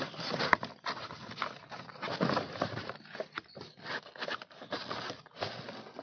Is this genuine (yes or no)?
yes